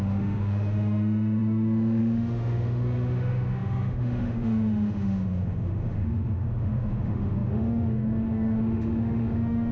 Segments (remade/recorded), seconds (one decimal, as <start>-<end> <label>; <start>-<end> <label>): 0.0-9.7 remade